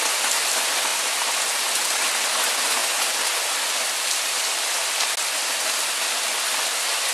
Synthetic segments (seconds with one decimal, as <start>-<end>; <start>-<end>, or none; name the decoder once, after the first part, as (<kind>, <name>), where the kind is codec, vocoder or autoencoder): none